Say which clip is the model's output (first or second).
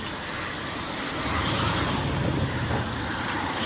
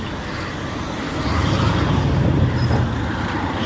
first